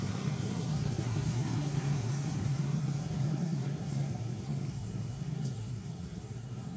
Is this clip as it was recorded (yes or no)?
no